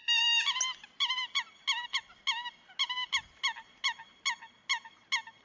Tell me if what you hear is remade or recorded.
recorded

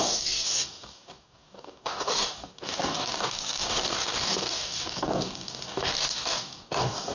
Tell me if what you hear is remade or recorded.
remade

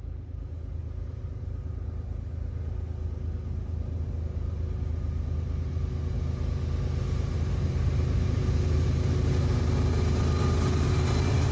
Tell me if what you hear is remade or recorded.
recorded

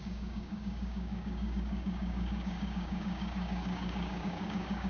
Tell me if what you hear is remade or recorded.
remade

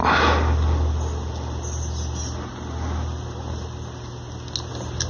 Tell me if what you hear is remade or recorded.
recorded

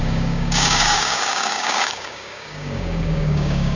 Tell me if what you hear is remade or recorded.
remade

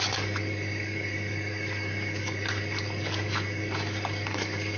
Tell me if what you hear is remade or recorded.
remade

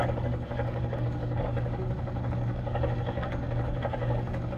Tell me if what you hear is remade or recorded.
remade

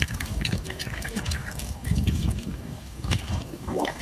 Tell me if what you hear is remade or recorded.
remade